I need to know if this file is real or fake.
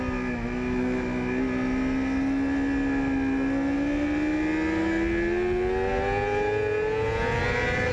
real